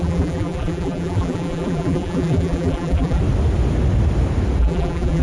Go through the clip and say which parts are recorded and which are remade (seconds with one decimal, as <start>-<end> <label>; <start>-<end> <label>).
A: 0.0-3.2 remade; 3.2-4.6 recorded; 4.6-5.2 remade